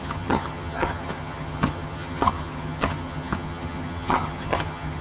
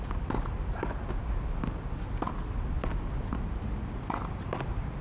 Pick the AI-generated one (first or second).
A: first